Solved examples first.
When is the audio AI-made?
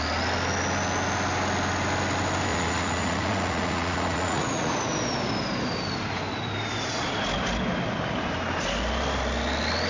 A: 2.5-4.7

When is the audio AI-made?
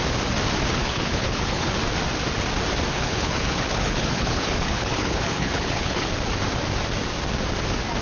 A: 0.8-1.7; 2.9-6.1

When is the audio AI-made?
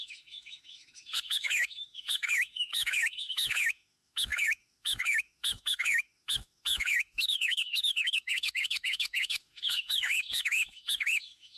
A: 0.0-11.6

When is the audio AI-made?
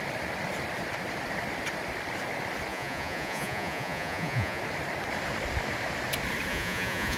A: 2.7-4.6; 6.5-7.2